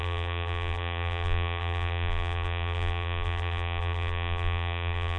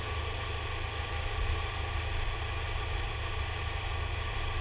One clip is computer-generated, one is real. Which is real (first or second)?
second